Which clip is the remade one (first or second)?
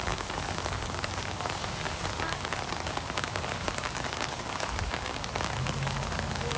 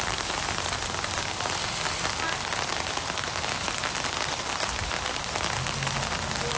first